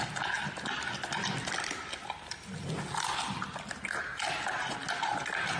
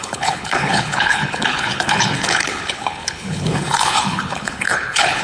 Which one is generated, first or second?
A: second